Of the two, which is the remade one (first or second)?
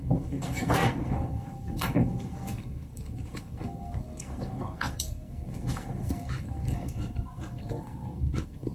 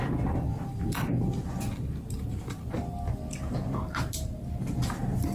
first